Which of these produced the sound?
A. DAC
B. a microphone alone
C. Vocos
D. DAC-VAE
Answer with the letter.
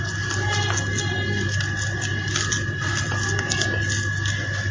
B